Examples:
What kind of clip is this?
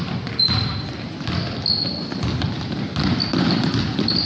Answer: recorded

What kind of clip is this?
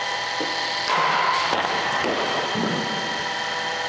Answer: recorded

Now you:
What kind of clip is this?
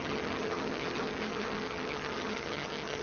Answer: remade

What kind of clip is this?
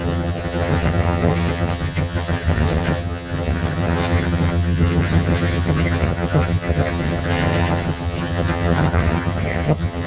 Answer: remade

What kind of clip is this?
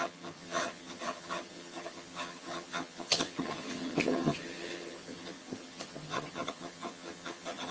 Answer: remade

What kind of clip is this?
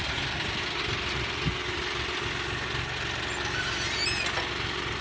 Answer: recorded